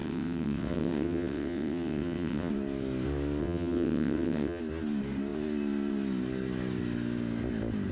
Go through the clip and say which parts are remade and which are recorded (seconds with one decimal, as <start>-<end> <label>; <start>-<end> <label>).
0.0-2.5 remade; 2.5-3.4 recorded; 3.4-4.6 remade; 4.6-7.9 recorded